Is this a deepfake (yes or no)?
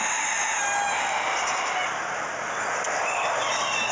no